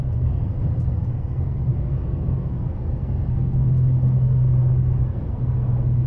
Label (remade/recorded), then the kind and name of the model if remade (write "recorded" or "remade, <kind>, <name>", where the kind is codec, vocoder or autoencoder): remade, codec, SNAC